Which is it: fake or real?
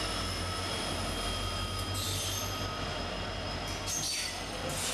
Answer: real